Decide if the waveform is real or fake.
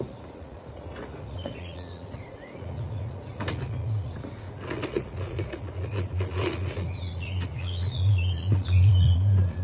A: fake